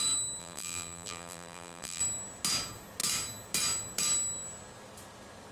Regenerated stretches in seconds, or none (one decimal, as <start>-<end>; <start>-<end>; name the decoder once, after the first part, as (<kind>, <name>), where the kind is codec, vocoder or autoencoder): 0.4-2.0 (vocoder, BigVGAN v2)